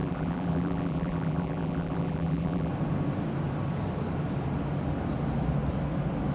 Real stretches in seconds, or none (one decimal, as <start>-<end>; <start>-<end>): 2.7-6.3